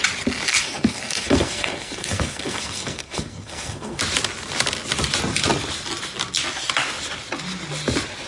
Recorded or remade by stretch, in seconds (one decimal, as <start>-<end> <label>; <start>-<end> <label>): 0.0-0.5 recorded; 0.5-4.0 remade; 4.0-8.3 recorded